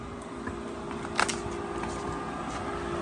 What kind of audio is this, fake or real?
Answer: real